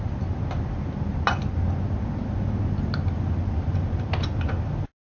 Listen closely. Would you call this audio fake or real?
real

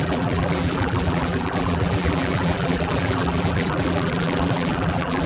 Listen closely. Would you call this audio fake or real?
fake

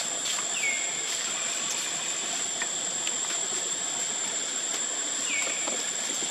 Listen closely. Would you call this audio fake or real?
real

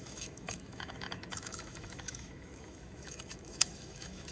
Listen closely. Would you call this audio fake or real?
fake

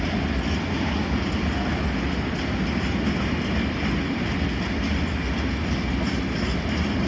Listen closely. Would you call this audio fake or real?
real